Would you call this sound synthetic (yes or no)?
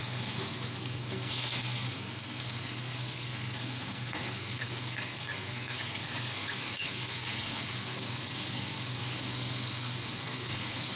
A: yes